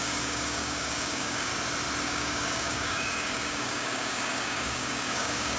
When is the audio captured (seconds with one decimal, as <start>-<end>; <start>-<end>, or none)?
1.5-2.0